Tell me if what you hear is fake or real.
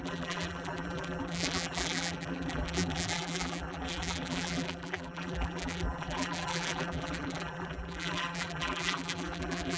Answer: fake